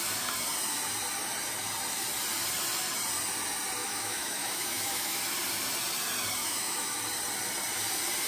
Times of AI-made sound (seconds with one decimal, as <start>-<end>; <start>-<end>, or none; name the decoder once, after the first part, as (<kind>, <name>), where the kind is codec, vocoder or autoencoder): 3.8-5.2 (autoencoder, DAC-VAE); 6.4-7.0